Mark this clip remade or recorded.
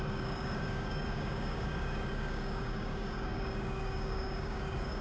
remade